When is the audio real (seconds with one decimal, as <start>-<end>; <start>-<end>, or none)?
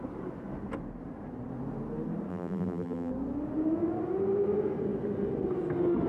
0.0-2.3; 3.1-6.1